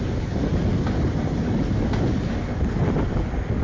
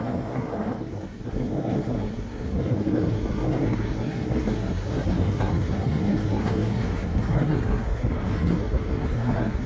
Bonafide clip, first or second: first